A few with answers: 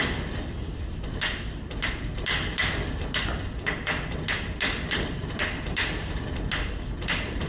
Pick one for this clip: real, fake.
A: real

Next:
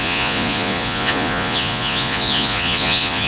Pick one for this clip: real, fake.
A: fake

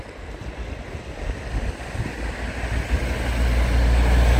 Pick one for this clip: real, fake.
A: real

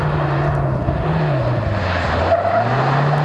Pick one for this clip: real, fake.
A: real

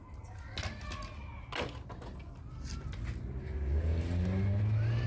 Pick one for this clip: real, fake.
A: real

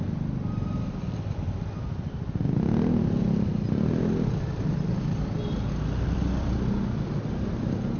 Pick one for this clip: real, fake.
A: real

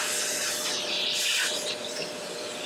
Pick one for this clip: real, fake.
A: real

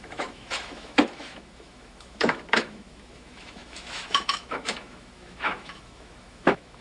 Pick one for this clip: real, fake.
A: fake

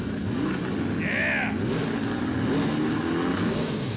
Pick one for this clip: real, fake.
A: real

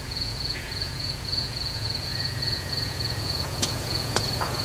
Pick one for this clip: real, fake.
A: fake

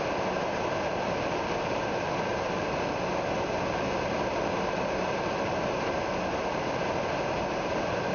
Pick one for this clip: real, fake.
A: real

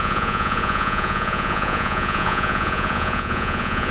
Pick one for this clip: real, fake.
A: fake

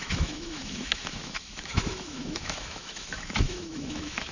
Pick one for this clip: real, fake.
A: fake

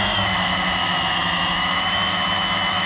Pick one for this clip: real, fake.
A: fake